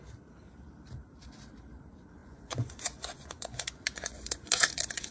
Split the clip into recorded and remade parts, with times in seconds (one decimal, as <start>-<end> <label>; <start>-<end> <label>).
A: 0.0-2.2 recorded; 2.2-5.1 remade